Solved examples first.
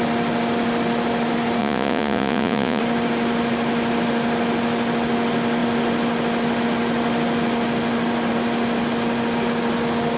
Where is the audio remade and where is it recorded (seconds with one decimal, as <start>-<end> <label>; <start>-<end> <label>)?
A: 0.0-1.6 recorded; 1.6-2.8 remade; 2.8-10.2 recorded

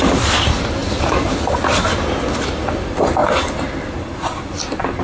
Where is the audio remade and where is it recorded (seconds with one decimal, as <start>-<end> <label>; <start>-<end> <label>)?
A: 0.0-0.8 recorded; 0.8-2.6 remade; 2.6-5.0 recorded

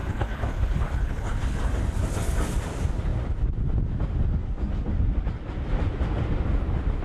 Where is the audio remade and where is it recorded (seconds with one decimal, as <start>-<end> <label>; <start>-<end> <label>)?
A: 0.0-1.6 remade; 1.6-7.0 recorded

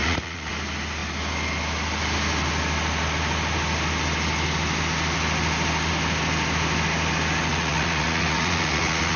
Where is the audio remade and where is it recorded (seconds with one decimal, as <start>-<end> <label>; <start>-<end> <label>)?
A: 0.0-0.5 remade; 0.5-7.5 recorded; 7.5-9.2 remade

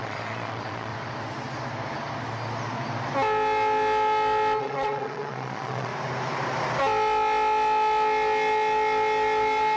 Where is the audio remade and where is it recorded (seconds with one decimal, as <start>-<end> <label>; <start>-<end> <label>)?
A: 0.0-0.9 remade; 0.9-4.6 recorded; 4.6-5.9 remade; 5.9-9.8 recorded